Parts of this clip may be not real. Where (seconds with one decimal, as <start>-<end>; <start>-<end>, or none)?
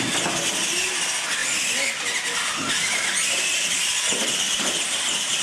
none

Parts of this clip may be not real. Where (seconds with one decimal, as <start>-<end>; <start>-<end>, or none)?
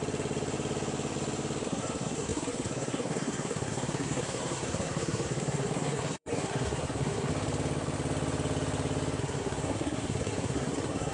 1.6-7.3; 9.2-11.1